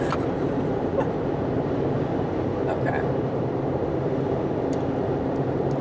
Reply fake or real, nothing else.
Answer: fake